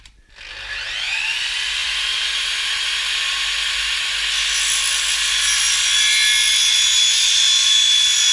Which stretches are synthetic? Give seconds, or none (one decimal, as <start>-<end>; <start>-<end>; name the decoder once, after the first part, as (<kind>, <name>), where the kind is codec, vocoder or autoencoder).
none